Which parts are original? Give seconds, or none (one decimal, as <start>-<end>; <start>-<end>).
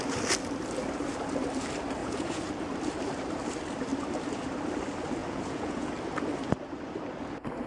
0.0-2.0; 2.5-5.2; 5.9-7.7